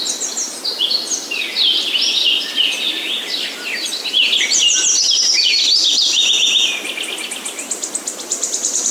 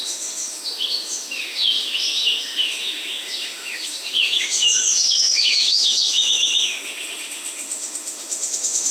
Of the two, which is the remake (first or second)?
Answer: second